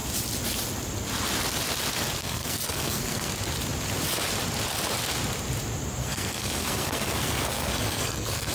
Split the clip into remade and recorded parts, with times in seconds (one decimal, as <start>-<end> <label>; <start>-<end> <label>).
0.0-2.2 recorded; 2.2-3.3 remade; 3.3-6.0 recorded; 6.0-8.5 remade